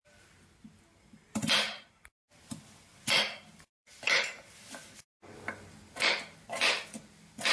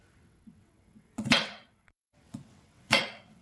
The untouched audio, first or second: first